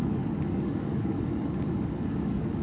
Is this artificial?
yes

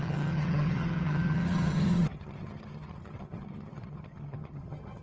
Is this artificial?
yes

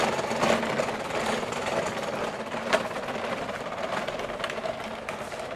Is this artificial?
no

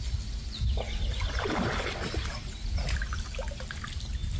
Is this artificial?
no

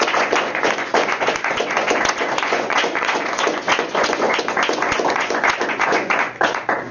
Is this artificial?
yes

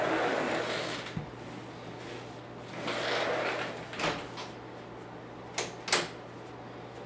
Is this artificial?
no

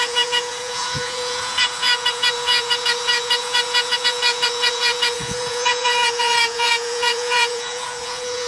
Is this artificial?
yes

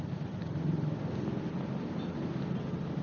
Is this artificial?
no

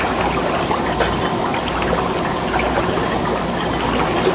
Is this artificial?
no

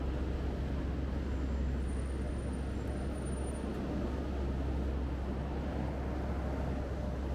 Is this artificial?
no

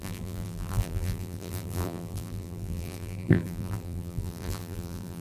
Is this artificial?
yes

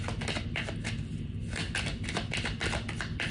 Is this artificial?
no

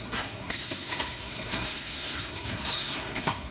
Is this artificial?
yes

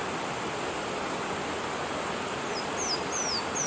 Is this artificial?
no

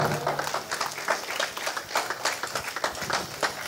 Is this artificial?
no